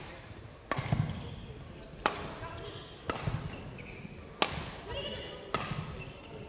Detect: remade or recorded recorded